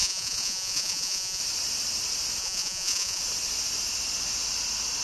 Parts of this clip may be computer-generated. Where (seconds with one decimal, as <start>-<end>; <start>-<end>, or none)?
0.0-1.4; 2.4-3.2